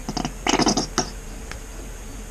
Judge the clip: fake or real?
real